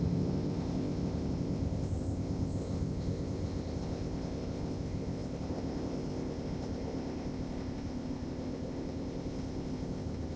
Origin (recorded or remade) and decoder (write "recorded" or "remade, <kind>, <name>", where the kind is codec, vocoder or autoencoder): remade, codec, ZipCodec